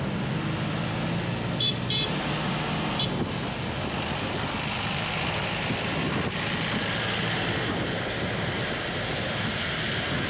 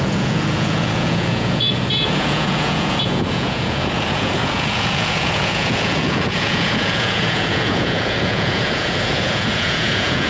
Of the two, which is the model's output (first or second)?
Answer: second